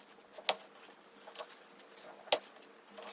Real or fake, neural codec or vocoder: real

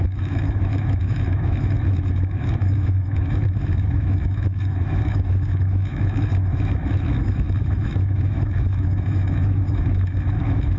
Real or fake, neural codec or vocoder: fake, autoencoder, DAC-VAE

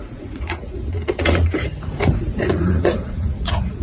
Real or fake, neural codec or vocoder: fake, vocoder, Vocos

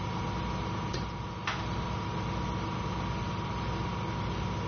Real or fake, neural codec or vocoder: real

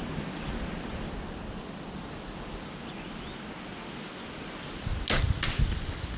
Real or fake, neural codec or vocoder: real